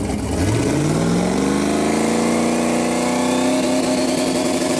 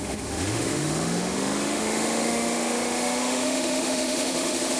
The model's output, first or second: second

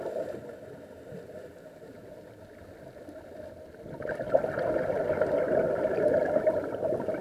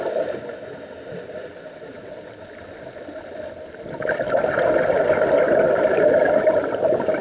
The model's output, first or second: first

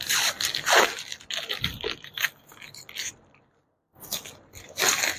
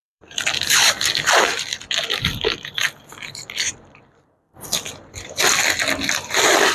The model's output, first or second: second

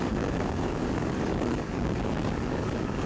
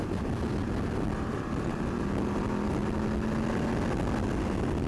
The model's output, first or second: first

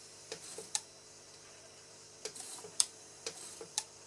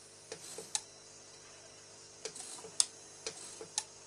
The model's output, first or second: first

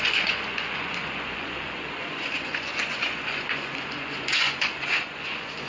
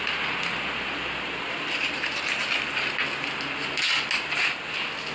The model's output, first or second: first